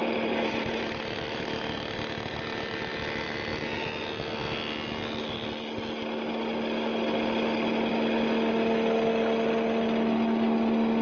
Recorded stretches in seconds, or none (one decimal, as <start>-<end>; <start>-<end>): 0.8-11.0

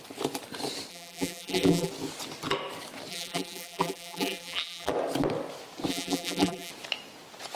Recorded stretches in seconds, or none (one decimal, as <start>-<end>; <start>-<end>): 0.0-0.9; 1.9-3.1; 4.9-5.9; 6.7-7.6

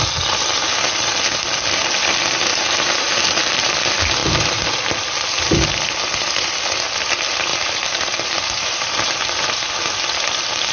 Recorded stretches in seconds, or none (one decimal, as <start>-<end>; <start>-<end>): 0.0-2.5; 3.7-4.2; 4.8-7.5; 9.4-10.7

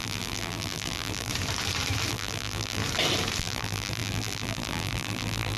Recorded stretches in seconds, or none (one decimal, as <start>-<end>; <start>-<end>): 1.3-2.1; 2.8-3.4

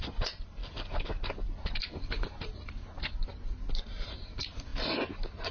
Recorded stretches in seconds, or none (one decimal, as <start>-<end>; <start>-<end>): 0.6-3.9; 4.7-5.5

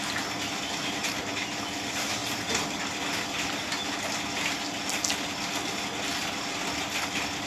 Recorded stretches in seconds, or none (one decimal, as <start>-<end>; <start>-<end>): 0.0-7.5